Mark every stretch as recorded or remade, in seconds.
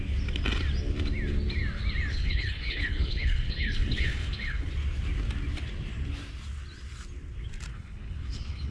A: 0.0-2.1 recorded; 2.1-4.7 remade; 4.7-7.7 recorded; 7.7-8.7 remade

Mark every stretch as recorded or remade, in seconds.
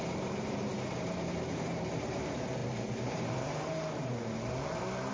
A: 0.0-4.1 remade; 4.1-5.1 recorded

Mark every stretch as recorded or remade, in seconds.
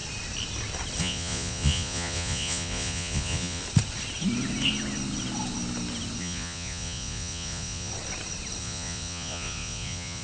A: 0.0-1.0 recorded; 1.0-3.6 remade; 3.6-6.2 recorded; 6.2-7.9 remade; 7.9-8.6 recorded; 8.6-10.2 remade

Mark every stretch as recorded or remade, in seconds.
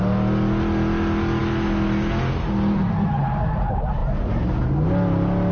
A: 0.0-5.5 recorded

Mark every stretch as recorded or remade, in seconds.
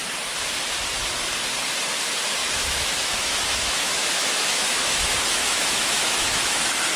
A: 0.0-2.4 recorded; 2.4-6.6 remade; 6.6-7.0 recorded